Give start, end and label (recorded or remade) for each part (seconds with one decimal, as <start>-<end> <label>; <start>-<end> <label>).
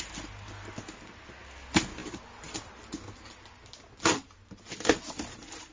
0.0-5.7 recorded